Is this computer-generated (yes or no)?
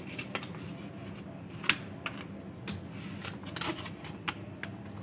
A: no